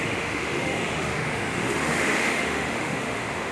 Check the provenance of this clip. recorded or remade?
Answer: remade